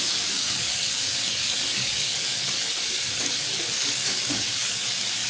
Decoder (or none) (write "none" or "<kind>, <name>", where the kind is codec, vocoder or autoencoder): codec, DAC